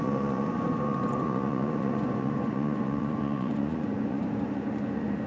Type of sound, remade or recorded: remade